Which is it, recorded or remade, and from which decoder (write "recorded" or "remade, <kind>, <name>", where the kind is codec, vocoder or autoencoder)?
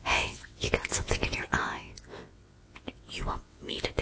remade, vocoder, WaveNeXt